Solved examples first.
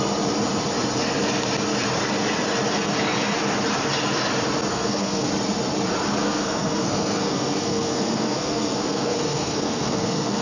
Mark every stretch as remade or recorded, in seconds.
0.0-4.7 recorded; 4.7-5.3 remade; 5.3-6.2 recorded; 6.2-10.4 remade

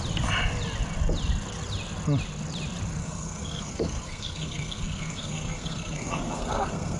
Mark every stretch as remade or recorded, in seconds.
0.0-3.0 recorded; 3.0-7.0 remade